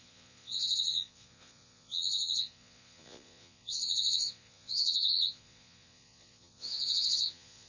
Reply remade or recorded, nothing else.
remade